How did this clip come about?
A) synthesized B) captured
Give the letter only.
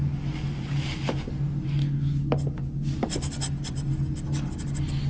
B